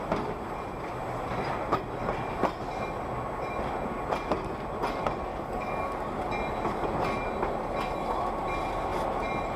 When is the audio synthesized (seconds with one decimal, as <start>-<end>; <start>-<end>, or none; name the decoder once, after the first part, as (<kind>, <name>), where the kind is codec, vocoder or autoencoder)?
5.3-6.3 (codec, DAC)